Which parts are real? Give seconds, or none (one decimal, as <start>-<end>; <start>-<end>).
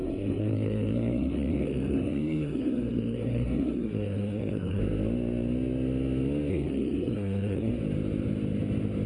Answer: 4.8-6.5; 7.7-9.1